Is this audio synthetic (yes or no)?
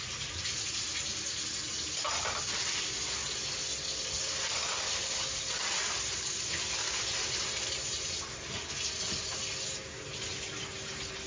no